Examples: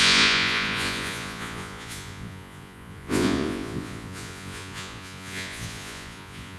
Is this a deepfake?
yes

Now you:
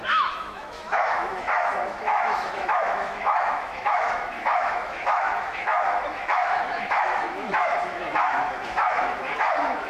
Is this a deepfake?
yes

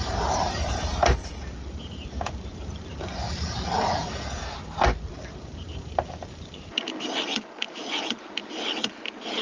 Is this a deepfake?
yes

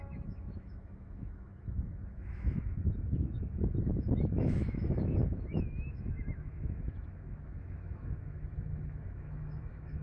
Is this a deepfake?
yes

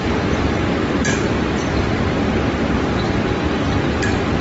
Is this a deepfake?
no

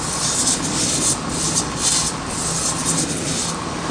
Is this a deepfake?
no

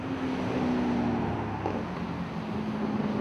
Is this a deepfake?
no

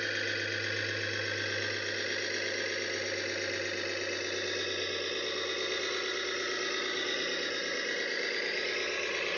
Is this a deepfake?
no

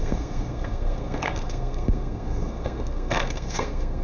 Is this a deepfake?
yes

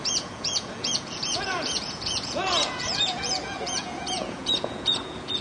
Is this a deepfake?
yes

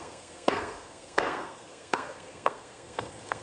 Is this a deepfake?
yes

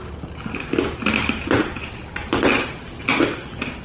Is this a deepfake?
no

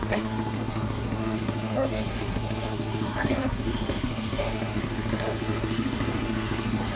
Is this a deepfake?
yes